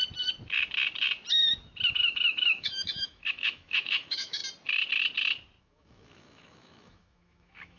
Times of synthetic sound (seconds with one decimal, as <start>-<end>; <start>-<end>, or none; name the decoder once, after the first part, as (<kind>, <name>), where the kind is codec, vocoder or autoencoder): 1.9-4.4 (autoencoder, DAC-VAE); 5.6-7.8